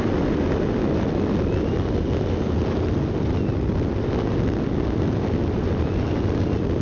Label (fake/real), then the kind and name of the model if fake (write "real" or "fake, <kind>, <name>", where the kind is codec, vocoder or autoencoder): real